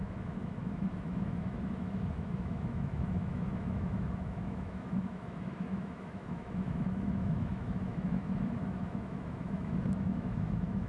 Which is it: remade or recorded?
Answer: remade